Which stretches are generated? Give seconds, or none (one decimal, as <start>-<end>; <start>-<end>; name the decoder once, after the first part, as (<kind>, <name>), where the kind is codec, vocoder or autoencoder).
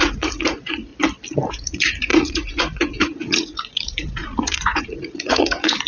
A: 0.0-0.9 (vocoder, Vocos); 1.5-5.9